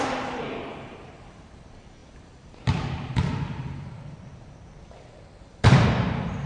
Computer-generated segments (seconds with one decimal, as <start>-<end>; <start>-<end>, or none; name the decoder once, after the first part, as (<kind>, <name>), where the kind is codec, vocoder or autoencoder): 0.0-6.5 (vocoder, BigVGAN v2)

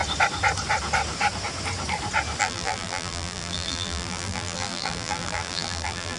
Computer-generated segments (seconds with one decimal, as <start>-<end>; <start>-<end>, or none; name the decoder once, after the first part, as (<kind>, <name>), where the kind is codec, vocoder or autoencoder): 2.4-6.2 (vocoder, BigVGAN v2)

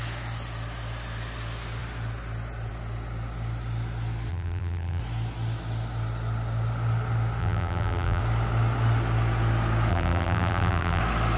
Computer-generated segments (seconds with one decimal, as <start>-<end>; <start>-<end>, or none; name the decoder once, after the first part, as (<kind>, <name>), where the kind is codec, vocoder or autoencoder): 4.3-5.0 (vocoder, BigVGAN v2); 7.4-8.2; 9.9-11.0

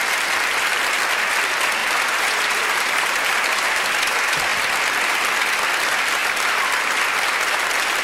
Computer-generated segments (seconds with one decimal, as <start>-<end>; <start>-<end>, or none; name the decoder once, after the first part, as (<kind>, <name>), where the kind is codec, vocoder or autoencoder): 1.8-3.8 (vocoder, BigVGAN v2)

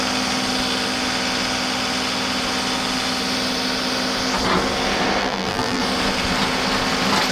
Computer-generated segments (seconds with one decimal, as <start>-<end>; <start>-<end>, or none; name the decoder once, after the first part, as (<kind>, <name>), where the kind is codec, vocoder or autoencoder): 5.2-5.8 (vocoder, BigVGAN v2)

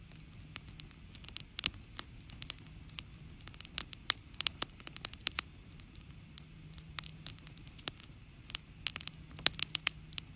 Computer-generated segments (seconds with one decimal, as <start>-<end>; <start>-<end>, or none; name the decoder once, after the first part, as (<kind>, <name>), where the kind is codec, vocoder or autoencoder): 5.2-8.8 (vocoder, BigVGAN v2)

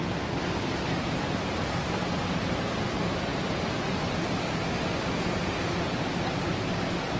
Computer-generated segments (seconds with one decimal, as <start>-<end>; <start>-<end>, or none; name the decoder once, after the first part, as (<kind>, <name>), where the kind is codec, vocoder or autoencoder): none

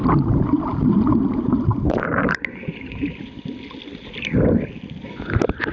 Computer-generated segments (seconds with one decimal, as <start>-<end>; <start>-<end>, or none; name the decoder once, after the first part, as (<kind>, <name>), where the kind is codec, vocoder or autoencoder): 0.0-3.4 (vocoder, BigVGAN v2)